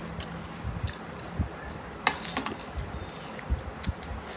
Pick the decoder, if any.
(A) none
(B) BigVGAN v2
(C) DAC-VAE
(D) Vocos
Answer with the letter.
A